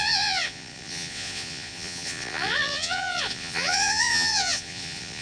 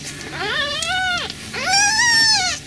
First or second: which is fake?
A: first